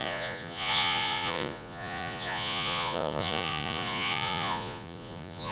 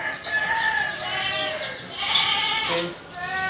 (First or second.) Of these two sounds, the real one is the second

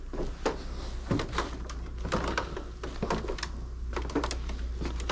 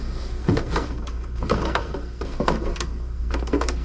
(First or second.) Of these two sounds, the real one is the first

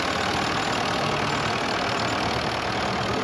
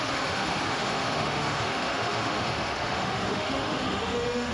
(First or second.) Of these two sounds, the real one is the first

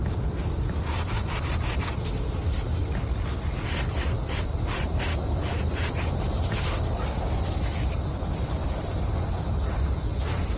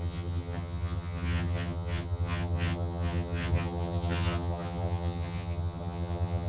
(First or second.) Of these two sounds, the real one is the first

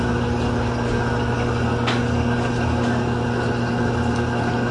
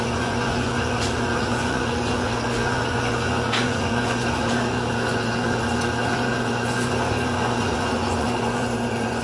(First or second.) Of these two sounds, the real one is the first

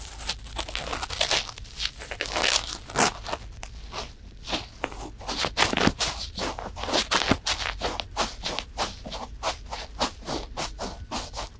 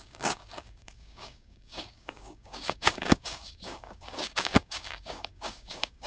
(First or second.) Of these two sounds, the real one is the first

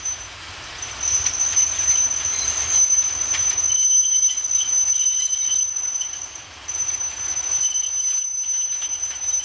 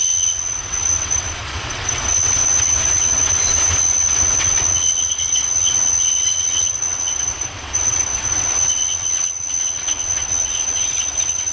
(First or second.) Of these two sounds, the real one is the first